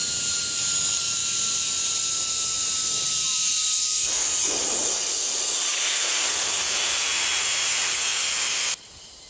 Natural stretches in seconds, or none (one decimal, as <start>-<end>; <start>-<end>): 0.0-8.1; 8.9-9.3